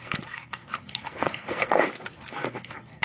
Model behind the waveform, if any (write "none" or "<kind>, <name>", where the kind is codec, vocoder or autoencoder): codec, SNAC